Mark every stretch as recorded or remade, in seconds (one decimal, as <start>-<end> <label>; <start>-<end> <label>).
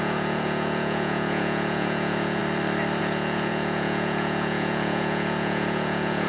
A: 0.0-2.4 remade; 2.4-3.0 recorded; 3.0-6.3 remade